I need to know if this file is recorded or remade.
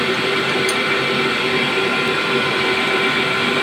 remade